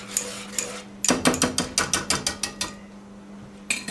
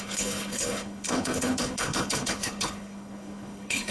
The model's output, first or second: second